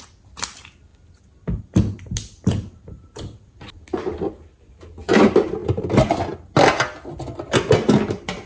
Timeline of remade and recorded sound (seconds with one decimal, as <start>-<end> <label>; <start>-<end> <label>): 0.0-8.5 recorded